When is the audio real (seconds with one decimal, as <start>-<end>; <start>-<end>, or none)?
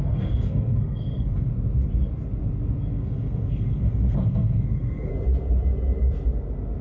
1.5-2.9; 5.1-6.8